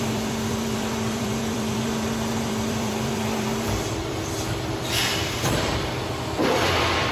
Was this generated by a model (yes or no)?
yes